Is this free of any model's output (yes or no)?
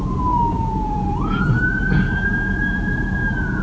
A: no